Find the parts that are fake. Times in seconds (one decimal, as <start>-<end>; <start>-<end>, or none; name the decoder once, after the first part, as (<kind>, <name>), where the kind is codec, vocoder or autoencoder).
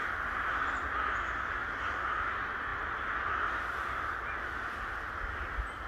0.0-0.7 (vocoder, BigVGAN v2); 2.7-3.2